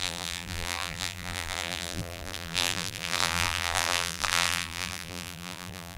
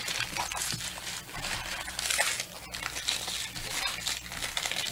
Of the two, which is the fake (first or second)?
first